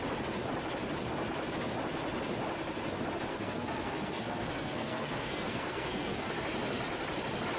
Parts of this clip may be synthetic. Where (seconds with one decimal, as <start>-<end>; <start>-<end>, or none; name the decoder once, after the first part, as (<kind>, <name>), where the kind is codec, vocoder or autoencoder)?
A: 3.3-6.3 (codec, SNAC)

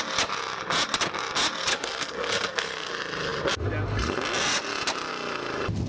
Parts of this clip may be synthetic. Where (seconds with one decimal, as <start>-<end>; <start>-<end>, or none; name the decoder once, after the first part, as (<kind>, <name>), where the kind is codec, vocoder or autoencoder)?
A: 1.7-2.9 (codec, SNAC)

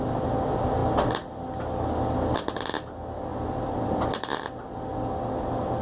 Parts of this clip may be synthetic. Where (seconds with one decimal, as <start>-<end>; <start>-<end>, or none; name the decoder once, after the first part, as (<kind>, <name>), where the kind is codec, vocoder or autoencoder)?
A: 3.3-4.3 (vocoder, BigVGAN v2)

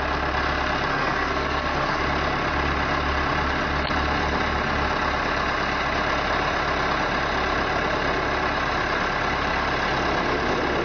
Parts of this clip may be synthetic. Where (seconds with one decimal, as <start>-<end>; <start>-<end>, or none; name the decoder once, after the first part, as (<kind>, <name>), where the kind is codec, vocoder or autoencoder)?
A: 0.9-2.0 (codec, SNAC)

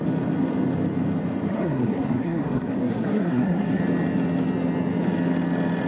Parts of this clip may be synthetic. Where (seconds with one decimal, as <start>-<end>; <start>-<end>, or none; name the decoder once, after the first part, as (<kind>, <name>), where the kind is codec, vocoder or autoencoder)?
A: 1.5-3.8 (codec, SNAC)

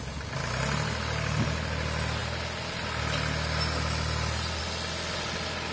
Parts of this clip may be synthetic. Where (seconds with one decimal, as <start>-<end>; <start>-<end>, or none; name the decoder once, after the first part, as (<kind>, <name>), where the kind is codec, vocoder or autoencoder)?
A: none

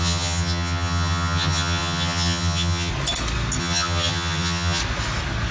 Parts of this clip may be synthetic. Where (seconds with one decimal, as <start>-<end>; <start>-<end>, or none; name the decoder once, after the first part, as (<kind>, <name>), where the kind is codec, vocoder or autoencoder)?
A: 0.0-2.9 (vocoder, HiFi-GAN); 3.6-4.8